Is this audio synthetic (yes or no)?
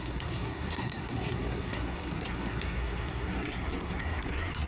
yes